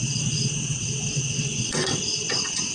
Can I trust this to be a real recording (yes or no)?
no